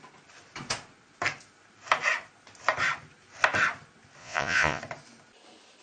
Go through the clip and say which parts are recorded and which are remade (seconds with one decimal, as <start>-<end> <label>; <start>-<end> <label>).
0.0-4.2 recorded; 4.2-4.8 remade; 4.8-5.8 recorded